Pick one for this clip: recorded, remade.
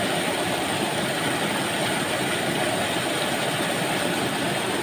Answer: recorded